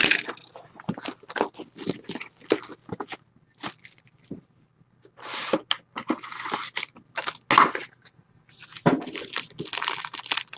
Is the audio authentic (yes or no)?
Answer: yes